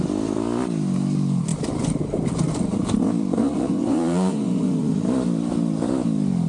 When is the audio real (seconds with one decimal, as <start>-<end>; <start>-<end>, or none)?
0.0-3.4; 4.9-6.5